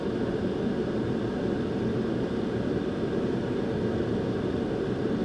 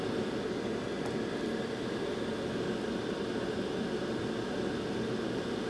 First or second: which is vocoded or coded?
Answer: first